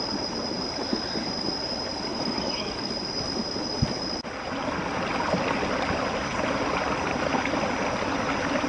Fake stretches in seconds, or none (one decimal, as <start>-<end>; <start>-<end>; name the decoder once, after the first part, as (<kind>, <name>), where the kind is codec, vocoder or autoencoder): 2.1-2.9 (codec, DAC)